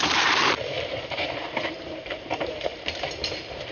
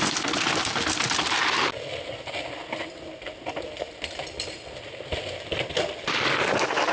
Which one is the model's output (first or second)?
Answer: first